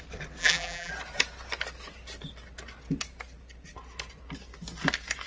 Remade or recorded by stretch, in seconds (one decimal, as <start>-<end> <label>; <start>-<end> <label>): 0.0-0.4 recorded; 0.4-0.9 remade; 0.9-5.3 recorded